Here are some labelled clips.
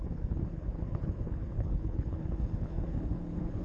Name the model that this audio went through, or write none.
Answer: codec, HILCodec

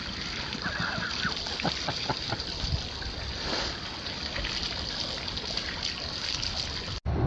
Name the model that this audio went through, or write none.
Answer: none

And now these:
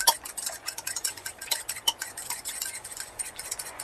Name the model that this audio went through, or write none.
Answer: vocoder, Vocos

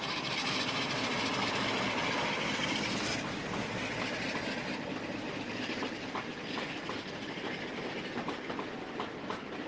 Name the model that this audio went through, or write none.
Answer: none